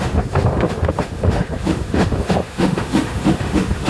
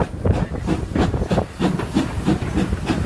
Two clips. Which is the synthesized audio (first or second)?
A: first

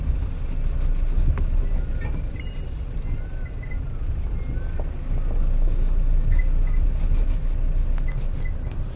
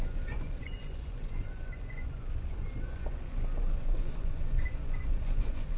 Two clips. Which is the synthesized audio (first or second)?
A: second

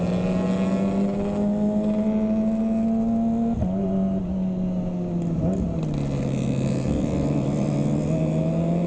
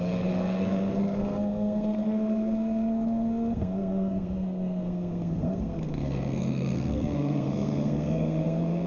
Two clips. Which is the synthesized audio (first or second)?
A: second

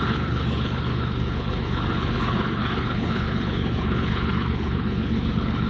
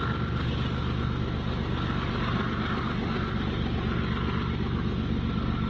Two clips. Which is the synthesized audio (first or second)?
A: first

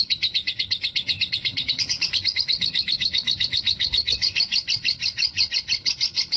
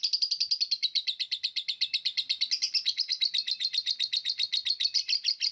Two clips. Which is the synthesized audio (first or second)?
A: first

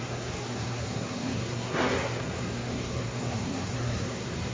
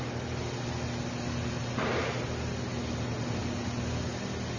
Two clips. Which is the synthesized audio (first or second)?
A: first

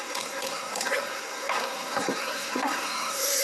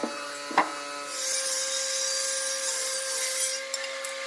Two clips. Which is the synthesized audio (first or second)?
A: first